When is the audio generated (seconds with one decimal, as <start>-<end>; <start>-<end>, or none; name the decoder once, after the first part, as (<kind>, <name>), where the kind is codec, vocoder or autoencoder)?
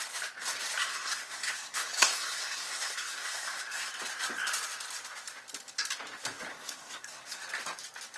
0.8-3.9 (codec, SNAC); 6.5-7.4